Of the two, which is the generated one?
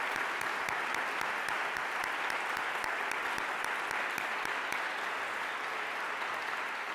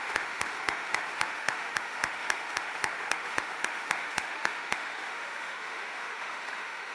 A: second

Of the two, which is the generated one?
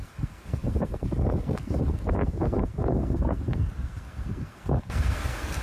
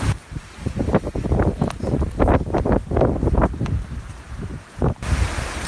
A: first